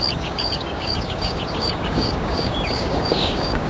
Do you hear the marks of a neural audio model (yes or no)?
yes